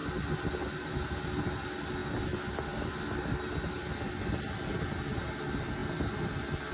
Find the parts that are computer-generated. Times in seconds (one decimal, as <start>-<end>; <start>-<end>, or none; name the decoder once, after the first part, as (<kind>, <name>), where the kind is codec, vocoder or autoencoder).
none